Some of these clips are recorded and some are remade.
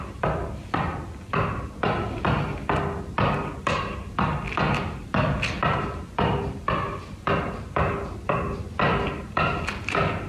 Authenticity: recorded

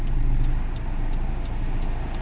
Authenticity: recorded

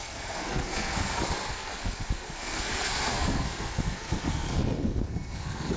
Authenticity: remade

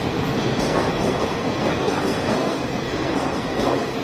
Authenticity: remade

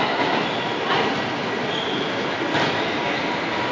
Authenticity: recorded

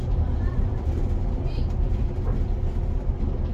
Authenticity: recorded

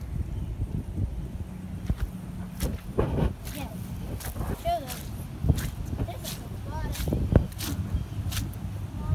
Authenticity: recorded